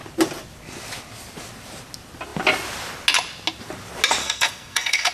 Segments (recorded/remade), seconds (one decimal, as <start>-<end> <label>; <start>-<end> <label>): 0.0-4.2 recorded; 4.2-5.1 remade